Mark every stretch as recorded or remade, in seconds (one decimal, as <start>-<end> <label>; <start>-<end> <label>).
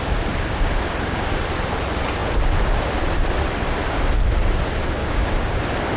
0.0-5.0 recorded; 5.0-5.6 remade; 5.6-6.0 recorded